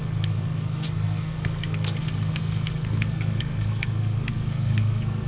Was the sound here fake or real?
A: fake